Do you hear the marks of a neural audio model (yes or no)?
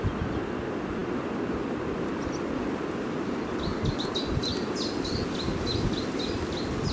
no